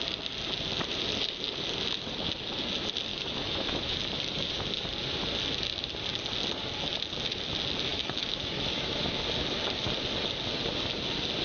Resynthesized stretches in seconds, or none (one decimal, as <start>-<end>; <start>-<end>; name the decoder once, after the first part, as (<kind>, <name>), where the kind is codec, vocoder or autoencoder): 3.1-4.0 (autoencoder, DAC-VAE); 7.9-9.0